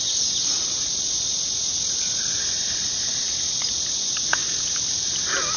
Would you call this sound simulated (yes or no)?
no